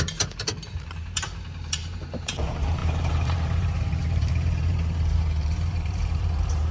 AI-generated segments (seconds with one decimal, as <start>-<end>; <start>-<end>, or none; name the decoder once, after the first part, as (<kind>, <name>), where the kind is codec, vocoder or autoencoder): 0.0-6.7 (vocoder, BigVGAN v2)